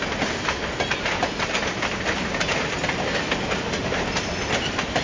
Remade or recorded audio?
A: recorded